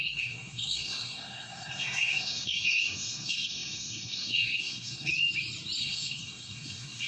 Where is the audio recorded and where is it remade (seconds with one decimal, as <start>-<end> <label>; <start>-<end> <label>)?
0.0-5.1 remade; 5.1-5.8 recorded; 5.8-7.1 remade